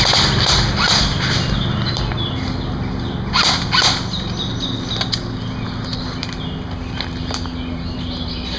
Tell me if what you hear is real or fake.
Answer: real